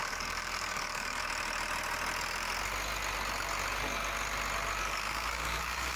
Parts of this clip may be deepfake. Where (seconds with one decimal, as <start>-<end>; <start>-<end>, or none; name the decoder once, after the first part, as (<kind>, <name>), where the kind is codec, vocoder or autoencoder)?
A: 0.0-1.2 (codec, DAC); 4.8-6.0